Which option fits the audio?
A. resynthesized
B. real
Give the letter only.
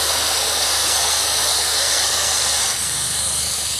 A